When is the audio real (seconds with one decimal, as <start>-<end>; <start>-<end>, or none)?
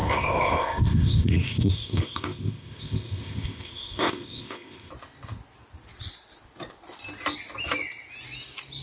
4.9-8.8